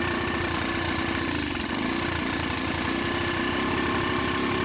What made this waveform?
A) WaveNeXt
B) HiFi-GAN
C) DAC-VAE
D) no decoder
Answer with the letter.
D